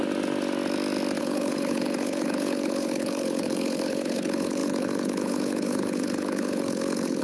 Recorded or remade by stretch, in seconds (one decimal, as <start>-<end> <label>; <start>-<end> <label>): 0.0-1.2 recorded; 1.2-7.2 remade